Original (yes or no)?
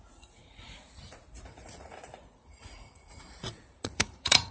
no